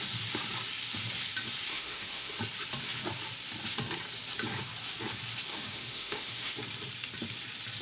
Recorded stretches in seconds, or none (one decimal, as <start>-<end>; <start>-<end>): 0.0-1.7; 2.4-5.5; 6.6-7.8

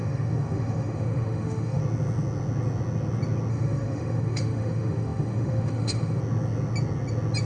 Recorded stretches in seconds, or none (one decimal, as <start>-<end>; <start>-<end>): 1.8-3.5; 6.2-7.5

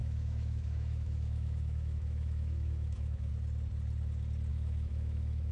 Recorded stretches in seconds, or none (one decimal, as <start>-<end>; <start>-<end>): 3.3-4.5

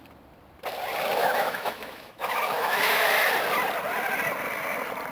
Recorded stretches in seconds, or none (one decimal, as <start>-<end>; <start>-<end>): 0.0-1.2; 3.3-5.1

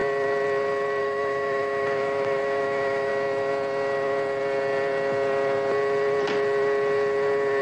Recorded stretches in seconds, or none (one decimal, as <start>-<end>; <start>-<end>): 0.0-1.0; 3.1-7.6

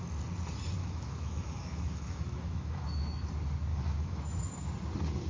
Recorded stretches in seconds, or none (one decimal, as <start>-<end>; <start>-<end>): 0.0-0.8; 3.3-3.7; 4.4-5.3